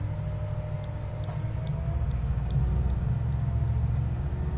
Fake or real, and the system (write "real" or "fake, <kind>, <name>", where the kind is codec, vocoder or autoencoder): real